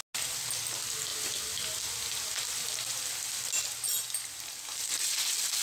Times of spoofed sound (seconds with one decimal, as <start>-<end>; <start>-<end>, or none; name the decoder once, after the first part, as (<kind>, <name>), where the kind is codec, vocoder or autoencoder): none